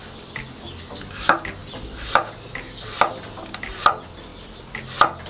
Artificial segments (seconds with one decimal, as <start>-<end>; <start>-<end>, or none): none

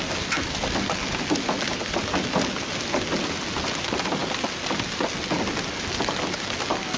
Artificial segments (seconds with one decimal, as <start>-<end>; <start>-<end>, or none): none

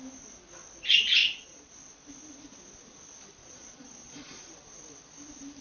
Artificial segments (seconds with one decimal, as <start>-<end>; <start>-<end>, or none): 1.2-1.7; 3.4-4.5